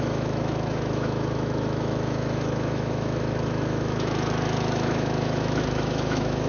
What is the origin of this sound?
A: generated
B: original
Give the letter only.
A